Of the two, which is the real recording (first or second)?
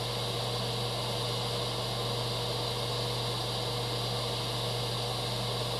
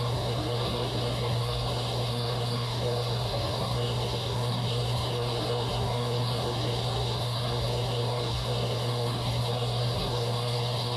first